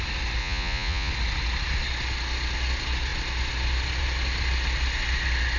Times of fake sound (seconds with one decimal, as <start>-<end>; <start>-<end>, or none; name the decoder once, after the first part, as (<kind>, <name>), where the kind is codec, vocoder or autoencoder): 0.4-1.1 (vocoder, Vocos)